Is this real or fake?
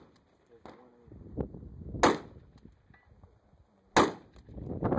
real